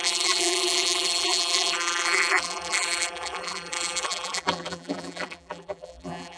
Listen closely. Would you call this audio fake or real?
fake